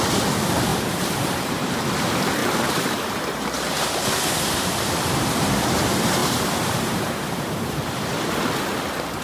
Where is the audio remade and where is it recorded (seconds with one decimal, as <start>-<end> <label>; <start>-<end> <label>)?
0.0-0.7 recorded; 0.7-1.8 remade; 1.8-2.4 recorded; 2.4-5.5 remade; 5.5-6.2 recorded; 6.2-8.3 remade; 8.3-9.2 recorded